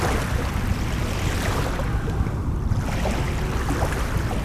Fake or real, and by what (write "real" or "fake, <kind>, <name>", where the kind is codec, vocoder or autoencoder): real